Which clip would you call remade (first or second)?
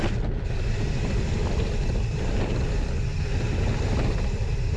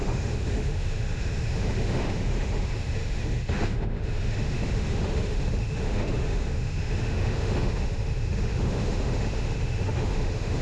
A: second